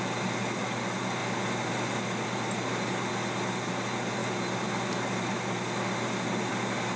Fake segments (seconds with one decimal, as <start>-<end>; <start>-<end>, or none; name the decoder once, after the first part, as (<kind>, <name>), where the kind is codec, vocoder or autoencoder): none